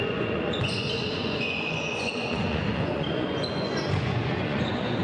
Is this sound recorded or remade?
remade